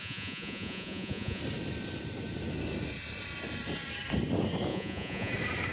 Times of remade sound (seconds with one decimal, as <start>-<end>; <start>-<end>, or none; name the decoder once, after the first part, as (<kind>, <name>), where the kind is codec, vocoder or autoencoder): 0.0-1.4 (vocoder, Vocos); 4.7-5.3